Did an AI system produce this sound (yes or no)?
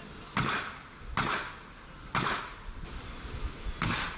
no